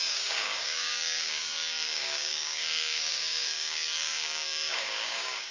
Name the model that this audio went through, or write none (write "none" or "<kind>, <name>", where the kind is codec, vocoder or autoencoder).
codec, DAC